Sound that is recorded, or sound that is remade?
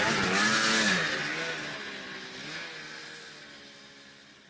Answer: recorded